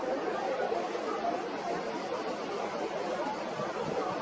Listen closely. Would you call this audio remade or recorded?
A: recorded